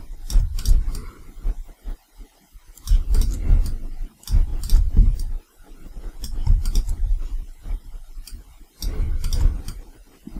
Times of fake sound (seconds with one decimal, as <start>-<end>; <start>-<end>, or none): 1.0-1.5; 4.5-8.6